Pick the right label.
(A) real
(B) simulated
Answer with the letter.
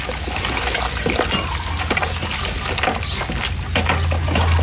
A